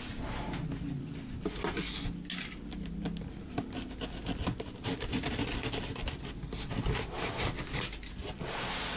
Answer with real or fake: real